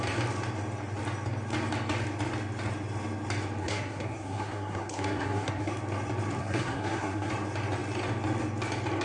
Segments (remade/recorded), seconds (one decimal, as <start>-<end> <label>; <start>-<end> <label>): 0.0-3.6 recorded; 3.6-5.7 remade; 5.7-6.4 recorded; 6.4-7.3 remade; 7.3-9.0 recorded